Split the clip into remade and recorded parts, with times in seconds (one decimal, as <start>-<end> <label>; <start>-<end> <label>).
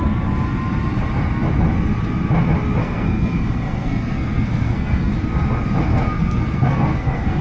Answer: 0.0-2.8 recorded; 2.8-5.1 remade; 5.1-5.9 recorded; 5.9-7.4 remade